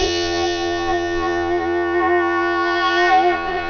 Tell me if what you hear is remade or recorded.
remade